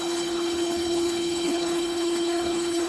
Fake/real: fake